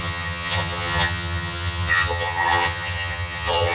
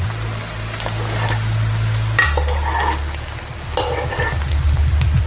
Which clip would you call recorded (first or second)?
second